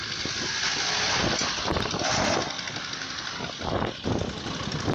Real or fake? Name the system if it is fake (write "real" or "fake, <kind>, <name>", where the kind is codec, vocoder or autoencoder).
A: real